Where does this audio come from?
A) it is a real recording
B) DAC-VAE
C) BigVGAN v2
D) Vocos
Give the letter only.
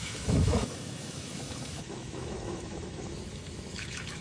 B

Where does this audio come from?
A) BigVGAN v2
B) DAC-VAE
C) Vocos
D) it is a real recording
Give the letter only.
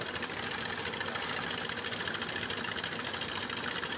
D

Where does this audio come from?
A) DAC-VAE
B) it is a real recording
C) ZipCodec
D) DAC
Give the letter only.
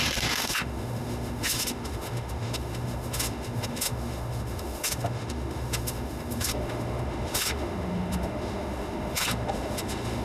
A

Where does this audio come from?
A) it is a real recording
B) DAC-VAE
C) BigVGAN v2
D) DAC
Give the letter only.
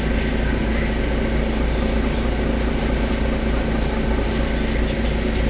A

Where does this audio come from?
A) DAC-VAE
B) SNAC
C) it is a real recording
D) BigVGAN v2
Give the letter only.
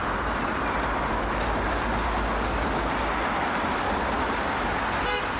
C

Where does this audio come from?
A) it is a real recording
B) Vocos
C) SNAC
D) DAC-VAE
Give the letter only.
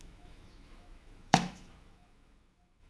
D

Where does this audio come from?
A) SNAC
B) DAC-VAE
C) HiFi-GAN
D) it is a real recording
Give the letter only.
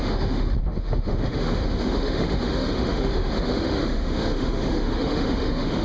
B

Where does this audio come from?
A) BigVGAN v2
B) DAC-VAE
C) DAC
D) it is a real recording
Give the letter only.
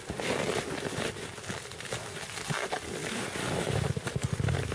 D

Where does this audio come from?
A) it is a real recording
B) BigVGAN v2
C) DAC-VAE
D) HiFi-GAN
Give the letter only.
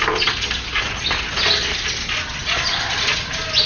A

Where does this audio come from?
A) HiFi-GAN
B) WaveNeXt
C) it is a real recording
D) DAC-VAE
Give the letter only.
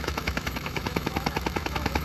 D